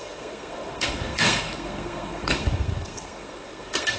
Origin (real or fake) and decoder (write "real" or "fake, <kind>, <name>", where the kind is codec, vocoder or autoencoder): fake, codec, SNAC